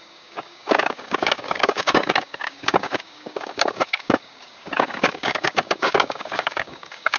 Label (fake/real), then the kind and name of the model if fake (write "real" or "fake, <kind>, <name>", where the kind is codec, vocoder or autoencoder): fake, codec, DAC